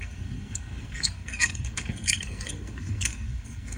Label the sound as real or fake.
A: fake